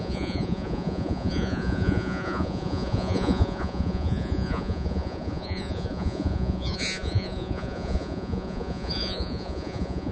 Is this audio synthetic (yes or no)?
yes